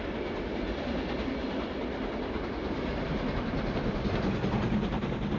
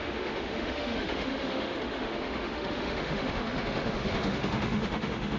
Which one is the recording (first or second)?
first